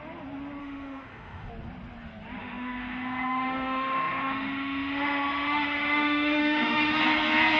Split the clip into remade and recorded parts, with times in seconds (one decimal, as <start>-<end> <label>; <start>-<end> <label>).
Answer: 0.0-0.6 recorded; 0.6-1.5 remade; 1.5-2.4 recorded; 2.4-7.0 remade; 7.0-7.6 recorded